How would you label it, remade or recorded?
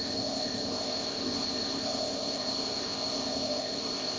remade